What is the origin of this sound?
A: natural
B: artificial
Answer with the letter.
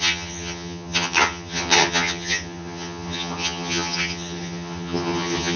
B